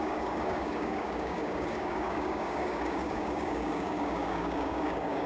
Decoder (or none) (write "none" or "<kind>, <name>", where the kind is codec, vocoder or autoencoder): codec, DAC